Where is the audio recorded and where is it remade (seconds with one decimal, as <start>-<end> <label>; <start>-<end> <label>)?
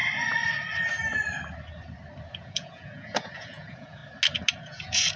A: 0.0-2.3 recorded; 2.3-4.0 remade; 4.0-4.6 recorded; 4.6-5.2 remade